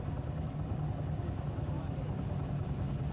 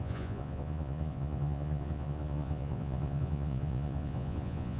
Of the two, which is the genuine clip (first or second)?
first